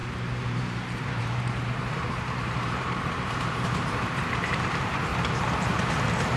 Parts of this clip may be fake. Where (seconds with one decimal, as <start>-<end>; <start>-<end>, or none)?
0.0-5.1; 5.6-6.4